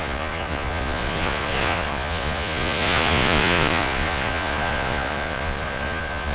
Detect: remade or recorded remade